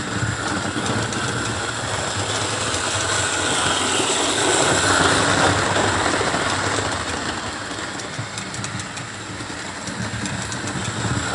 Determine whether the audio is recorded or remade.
recorded